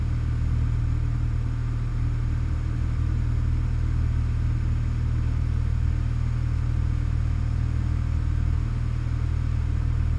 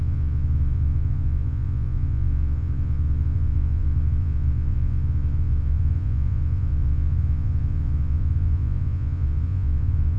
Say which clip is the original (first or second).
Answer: first